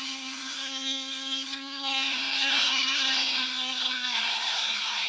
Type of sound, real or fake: fake